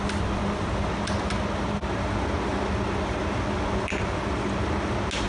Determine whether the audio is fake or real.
real